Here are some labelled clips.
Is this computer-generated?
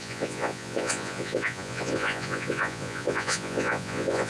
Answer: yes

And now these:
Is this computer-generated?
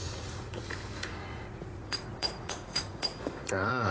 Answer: yes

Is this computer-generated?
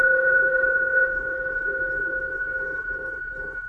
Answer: yes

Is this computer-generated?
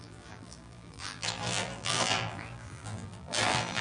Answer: yes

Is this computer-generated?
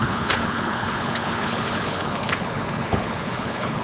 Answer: yes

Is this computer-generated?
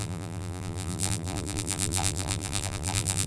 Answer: yes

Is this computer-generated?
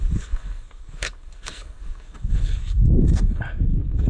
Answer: yes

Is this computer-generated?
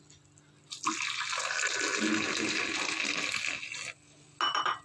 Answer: no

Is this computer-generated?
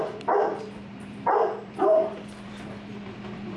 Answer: yes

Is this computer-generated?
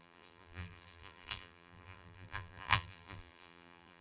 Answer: yes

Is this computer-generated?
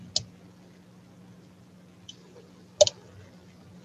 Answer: no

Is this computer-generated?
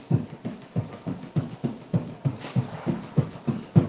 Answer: yes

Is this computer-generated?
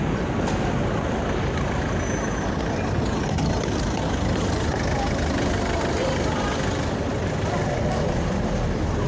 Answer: no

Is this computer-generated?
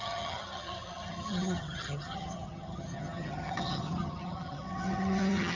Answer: yes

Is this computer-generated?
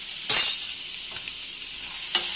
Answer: no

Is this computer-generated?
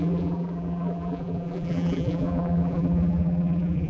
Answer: yes